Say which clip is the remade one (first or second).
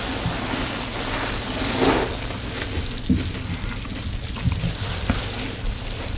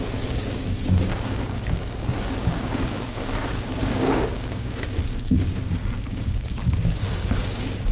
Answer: second